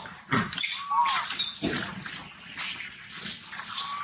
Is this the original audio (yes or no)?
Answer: yes